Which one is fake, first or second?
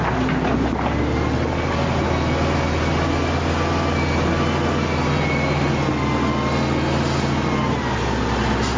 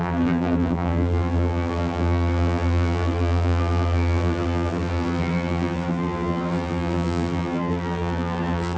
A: second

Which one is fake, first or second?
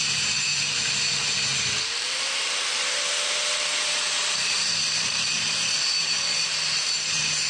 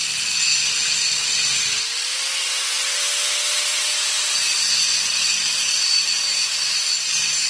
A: first